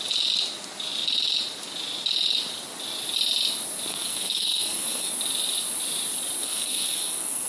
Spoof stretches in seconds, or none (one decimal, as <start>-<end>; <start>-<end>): 3.9-5.1; 6.4-7.5